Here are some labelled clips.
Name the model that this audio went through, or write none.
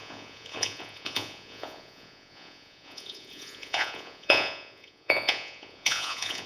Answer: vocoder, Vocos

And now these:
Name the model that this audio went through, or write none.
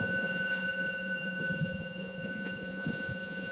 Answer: vocoder, Vocos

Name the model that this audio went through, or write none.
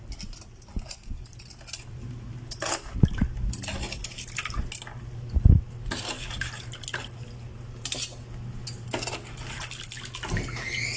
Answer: none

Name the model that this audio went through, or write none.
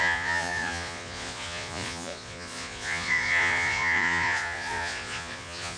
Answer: vocoder, Vocos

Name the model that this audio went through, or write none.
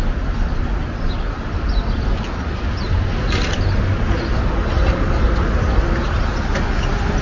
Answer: none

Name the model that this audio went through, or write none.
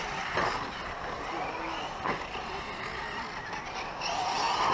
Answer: none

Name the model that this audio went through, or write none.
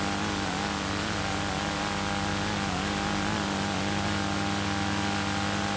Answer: none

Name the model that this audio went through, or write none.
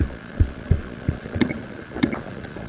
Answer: vocoder, Vocos